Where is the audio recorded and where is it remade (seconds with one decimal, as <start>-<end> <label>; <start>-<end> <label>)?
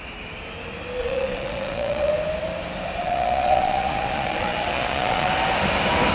0.0-1.0 recorded; 1.0-2.1 remade; 2.1-3.0 recorded; 3.0-5.3 remade; 5.3-6.1 recorded